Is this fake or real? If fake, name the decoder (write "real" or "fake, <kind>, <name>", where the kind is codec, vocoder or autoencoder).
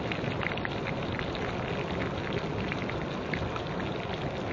real